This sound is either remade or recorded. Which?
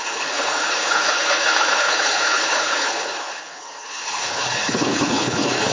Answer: remade